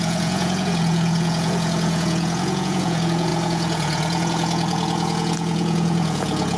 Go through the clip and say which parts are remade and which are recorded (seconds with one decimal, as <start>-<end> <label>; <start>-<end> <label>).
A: 0.0-6.6 remade